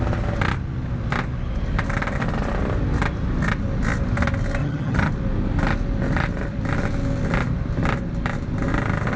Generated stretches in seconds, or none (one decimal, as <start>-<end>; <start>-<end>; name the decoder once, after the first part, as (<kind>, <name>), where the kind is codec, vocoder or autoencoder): 4.6-5.1 (vocoder, HiFi-GAN)